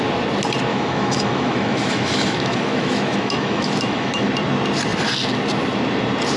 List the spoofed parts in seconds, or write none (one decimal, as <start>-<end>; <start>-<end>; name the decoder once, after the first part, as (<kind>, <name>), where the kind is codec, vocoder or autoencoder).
0.7-4.3 (autoencoder, DAC-VAE)